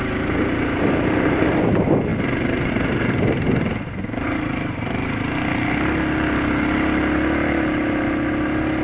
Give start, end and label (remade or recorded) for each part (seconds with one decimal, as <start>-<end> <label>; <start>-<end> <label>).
0.0-2.1 recorded; 2.1-2.7 remade; 2.7-8.8 recorded